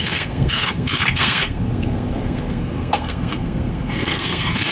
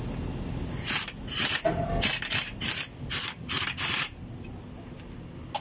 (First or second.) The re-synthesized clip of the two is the first